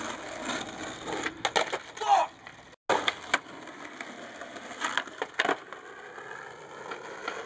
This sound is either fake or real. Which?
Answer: real